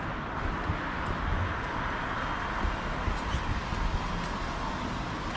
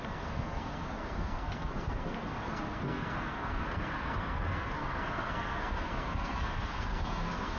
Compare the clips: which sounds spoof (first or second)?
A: second